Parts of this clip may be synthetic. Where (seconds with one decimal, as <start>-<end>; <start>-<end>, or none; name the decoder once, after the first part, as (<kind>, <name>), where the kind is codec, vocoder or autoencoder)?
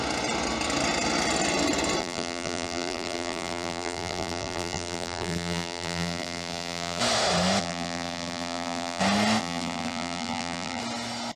2.0-7.0 (vocoder, BigVGAN v2); 7.6-9.0; 9.4-10.8